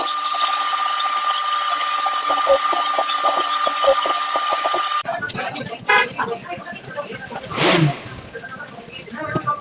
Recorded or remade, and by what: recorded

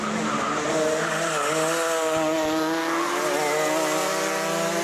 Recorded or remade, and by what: recorded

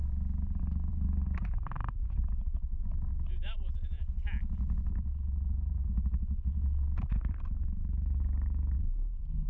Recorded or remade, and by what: recorded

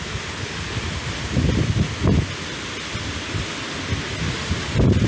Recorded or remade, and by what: recorded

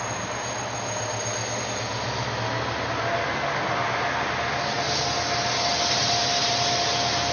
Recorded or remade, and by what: recorded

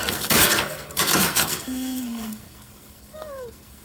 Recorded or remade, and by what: remade, codec, SNAC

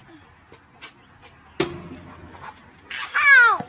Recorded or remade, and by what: recorded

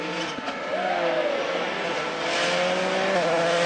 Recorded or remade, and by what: recorded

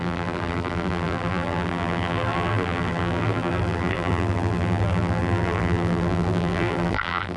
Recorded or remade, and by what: remade, vocoder, BigVGAN v2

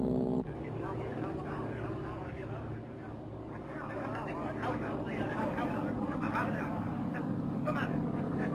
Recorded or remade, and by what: remade, codec, DAC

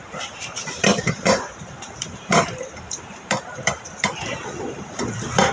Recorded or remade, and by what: remade, vocoder, BigVGAN v2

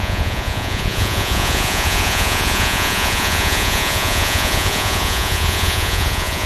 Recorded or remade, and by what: remade, vocoder, Vocos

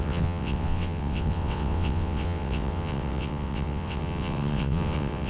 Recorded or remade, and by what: remade, vocoder, WaveNeXt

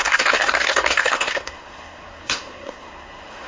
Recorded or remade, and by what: remade, codec, SNAC